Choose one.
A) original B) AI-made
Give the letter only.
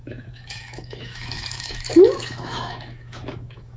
B